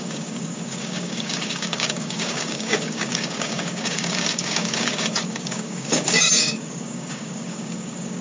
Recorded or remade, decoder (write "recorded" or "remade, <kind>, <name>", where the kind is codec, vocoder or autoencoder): remade, codec, DAC